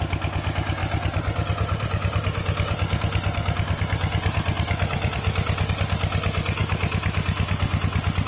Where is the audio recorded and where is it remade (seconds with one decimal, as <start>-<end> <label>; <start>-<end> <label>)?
0.0-0.8 recorded; 0.8-5.7 remade; 5.7-8.3 recorded